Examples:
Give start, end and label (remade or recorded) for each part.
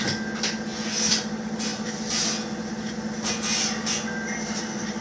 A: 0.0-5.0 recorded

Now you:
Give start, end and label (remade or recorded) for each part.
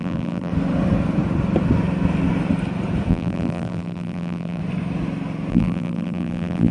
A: 0.0-0.5 remade; 0.5-3.1 recorded; 3.1-4.6 remade; 4.6-5.5 recorded; 5.5-6.7 remade